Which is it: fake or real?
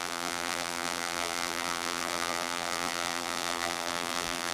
fake